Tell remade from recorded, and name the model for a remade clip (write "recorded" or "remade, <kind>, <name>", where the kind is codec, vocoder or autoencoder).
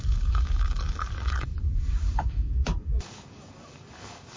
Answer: remade, codec, DAC